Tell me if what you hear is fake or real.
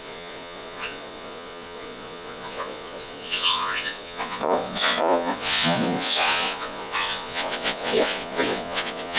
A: fake